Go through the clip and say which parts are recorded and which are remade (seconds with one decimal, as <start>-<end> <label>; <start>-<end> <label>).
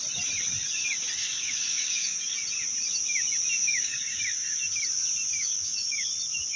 0.0-1.2 recorded; 1.2-2.2 remade; 2.2-3.6 recorded; 3.6-4.2 remade; 4.2-5.4 recorded; 5.4-6.1 remade; 6.1-6.6 recorded